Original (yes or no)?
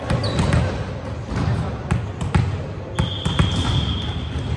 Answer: yes